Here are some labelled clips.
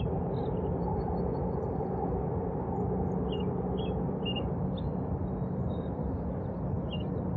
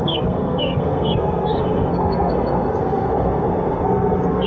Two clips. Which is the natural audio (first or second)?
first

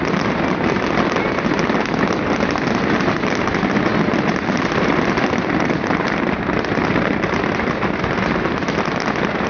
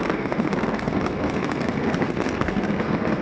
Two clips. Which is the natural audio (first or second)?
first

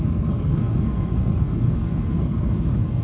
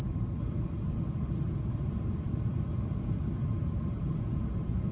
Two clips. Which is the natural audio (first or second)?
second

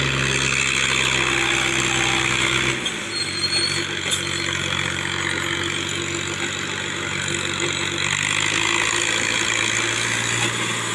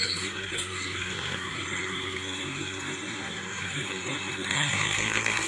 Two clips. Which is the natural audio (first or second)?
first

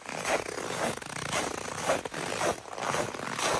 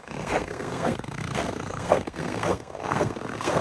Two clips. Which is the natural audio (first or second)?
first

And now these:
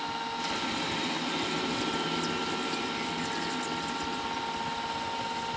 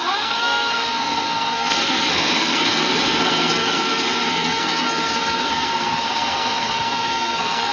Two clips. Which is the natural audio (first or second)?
first